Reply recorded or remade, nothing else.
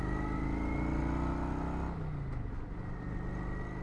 recorded